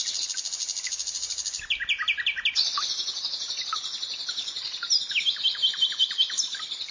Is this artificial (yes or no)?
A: no